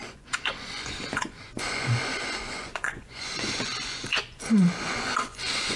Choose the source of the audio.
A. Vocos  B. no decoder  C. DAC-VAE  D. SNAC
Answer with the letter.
A